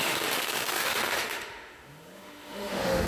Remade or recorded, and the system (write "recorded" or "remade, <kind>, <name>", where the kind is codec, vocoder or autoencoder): remade, autoencoder, DAC-VAE